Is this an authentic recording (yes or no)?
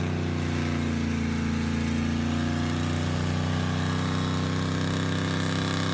yes